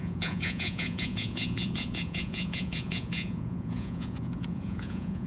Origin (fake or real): fake